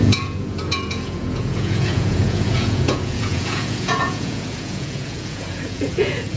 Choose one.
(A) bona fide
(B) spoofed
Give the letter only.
B